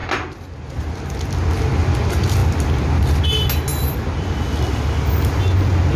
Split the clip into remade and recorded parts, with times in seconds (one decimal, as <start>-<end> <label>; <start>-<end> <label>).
0.0-6.0 recorded

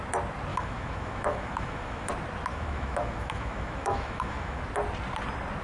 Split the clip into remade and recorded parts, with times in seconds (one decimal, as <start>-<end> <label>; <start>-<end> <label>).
0.0-0.5 recorded; 0.5-2.1 remade; 2.1-2.5 recorded; 2.5-4.6 remade; 4.6-5.6 recorded

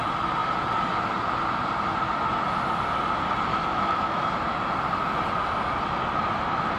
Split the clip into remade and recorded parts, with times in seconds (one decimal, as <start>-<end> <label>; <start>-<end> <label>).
0.0-3.5 recorded; 3.5-4.2 remade; 4.2-6.8 recorded

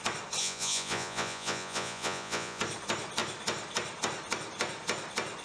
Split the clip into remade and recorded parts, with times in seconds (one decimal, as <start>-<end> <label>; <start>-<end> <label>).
0.0-0.4 recorded; 0.4-2.6 remade; 2.6-5.4 recorded

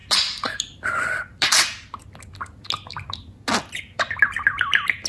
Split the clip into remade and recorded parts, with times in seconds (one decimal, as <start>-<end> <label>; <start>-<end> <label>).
0.0-5.1 recorded